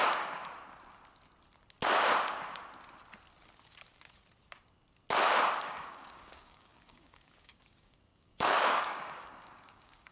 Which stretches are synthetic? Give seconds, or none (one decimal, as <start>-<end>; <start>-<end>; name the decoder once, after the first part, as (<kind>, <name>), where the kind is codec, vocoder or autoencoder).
0.0-0.4 (codec, DAC); 5.6-10.1